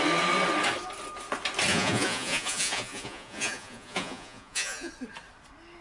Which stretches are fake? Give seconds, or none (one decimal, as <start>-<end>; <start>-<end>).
1.7-4.9